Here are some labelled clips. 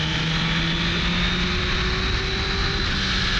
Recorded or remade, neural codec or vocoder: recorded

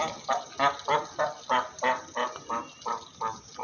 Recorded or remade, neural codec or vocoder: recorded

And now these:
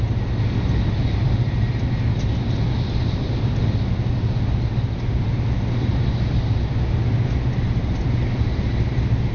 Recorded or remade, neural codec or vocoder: recorded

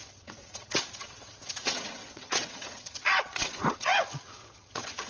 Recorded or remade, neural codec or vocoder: remade, vocoder, WaveNeXt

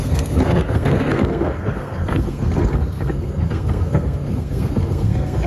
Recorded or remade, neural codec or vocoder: remade, codec, SNAC